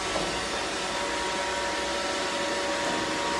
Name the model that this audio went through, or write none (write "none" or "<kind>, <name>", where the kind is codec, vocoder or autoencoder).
none